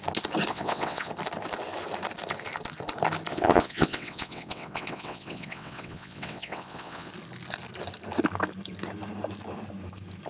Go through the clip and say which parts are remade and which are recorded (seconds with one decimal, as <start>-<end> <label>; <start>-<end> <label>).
0.0-0.5 recorded; 0.5-1.1 remade; 1.1-3.3 recorded; 3.3-7.1 remade; 7.1-10.3 recorded